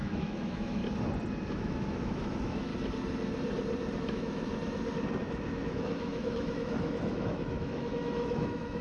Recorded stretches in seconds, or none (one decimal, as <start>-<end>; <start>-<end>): 0.8-1.5; 2.7-4.0; 4.5-5.2